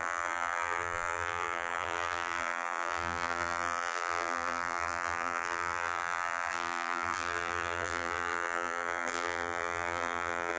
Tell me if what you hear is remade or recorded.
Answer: remade